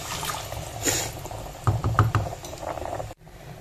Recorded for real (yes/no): no